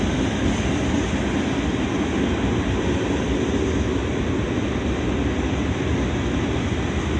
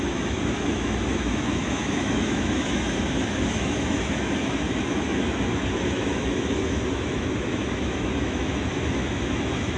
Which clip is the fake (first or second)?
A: second